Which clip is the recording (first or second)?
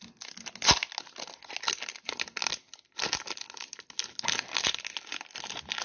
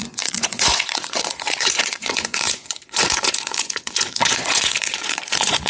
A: first